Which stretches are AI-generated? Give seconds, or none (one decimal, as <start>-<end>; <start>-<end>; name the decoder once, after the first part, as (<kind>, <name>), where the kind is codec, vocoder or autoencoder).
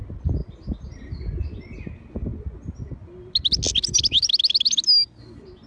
none